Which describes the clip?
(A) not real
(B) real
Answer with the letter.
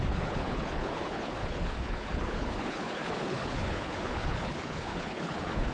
A